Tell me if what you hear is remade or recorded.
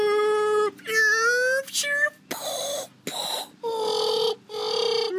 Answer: recorded